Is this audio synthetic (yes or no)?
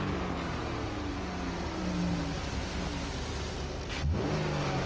no